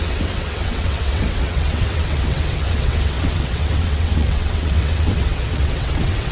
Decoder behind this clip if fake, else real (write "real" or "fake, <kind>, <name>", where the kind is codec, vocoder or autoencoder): fake, vocoder, WaveNeXt